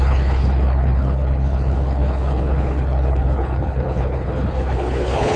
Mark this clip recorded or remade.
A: remade